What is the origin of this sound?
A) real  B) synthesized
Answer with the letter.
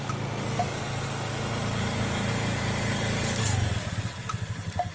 A